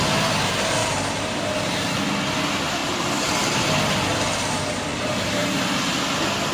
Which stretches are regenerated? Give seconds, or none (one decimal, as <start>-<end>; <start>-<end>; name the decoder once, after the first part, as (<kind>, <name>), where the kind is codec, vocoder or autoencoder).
0.8-2.0 (vocoder, BigVGAN v2); 4.9-5.6